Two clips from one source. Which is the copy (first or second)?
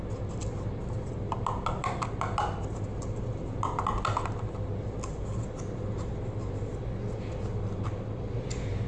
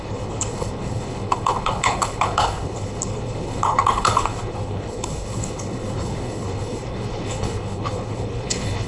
second